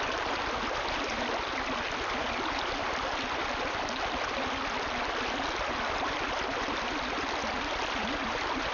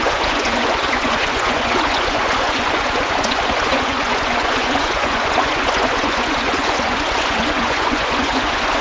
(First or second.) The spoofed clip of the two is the second